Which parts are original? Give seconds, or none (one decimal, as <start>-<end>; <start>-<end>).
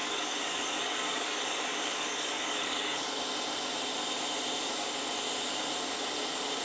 3.2-6.6